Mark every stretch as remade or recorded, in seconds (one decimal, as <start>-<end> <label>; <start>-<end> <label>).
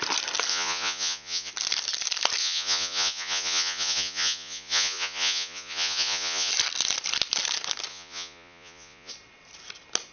0.0-0.5 recorded; 0.5-1.5 remade; 1.5-2.4 recorded; 2.4-6.5 remade; 6.5-7.9 recorded; 7.9-9.1 remade; 9.1-10.1 recorded